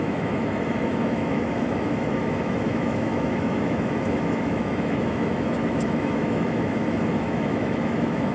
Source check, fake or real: fake